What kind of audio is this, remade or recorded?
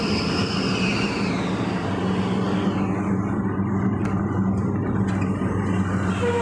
recorded